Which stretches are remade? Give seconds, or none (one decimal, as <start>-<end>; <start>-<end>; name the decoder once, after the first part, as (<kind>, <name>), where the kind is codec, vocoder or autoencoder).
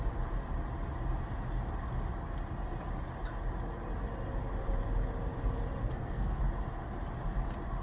5.8-6.4 (codec, SNAC)